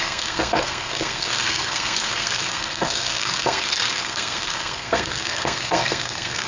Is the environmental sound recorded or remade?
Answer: remade